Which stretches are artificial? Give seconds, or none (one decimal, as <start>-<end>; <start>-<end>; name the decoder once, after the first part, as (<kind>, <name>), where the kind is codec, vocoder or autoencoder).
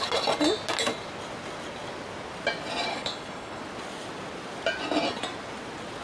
2.9-3.6 (codec, HILCodec)